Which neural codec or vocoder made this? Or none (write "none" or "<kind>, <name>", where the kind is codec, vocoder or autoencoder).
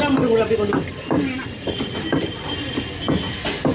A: none